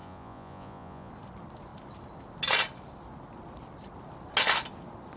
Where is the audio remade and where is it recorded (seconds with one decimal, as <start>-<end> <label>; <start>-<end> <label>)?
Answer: 0.0-1.1 remade; 1.1-5.2 recorded